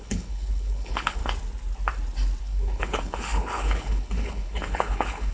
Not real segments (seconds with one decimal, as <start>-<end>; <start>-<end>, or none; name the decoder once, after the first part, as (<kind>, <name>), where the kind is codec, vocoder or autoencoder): 0.0-1.2 (codec, HILCodec); 2.4-5.3